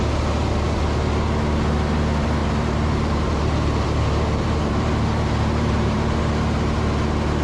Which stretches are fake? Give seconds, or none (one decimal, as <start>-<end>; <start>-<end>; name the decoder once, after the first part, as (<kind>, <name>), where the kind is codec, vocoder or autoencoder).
2.4-6.2 (vocoder, BigVGAN v2)